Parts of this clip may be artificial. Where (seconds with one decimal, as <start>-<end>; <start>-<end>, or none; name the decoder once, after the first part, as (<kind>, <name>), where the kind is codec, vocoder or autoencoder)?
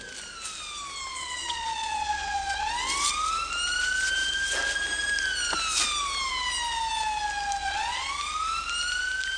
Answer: 1.1-2.7 (vocoder, Vocos); 7.6-8.1